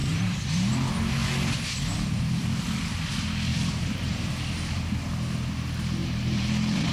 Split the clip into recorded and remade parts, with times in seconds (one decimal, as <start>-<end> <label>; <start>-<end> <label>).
0.0-0.7 remade; 0.7-3.5 recorded; 3.5-4.4 remade; 4.4-6.0 recorded; 6.0-6.9 remade